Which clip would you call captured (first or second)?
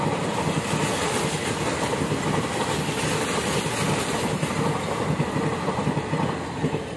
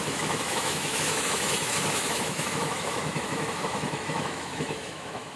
first